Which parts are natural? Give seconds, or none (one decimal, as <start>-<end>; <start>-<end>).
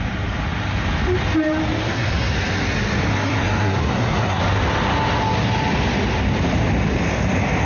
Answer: 0.0-1.7; 2.3-3.1; 4.4-7.7